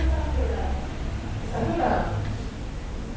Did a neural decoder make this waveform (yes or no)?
no